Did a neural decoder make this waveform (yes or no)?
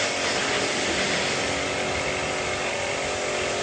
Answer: no